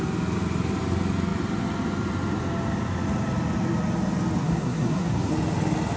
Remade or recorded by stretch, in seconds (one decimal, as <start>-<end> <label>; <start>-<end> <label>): 0.0-4.4 recorded; 4.4-5.3 remade; 5.3-6.0 recorded